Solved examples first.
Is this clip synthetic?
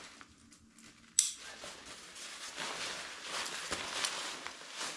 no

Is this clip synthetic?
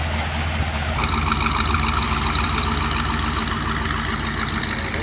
no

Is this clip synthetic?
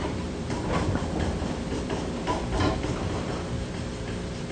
yes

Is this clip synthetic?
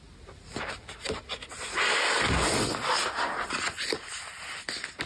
no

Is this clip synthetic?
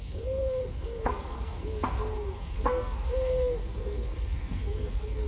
yes